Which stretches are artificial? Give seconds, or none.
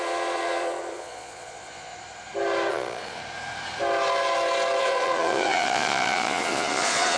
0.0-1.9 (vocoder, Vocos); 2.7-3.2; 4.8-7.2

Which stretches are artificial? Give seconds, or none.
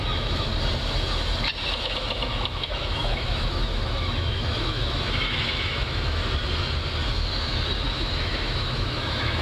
0.0-0.5 (autoencoder, DAC-VAE); 1.8-6.2; 7.9-9.4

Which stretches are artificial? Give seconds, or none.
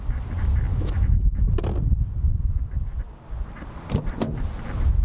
0.7-1.5 (autoencoder, DAC-VAE)